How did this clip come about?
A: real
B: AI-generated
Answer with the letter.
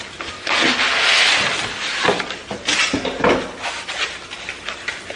A